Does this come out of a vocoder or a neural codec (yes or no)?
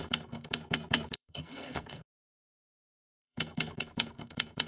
yes